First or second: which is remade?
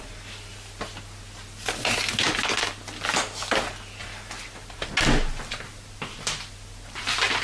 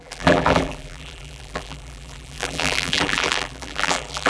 second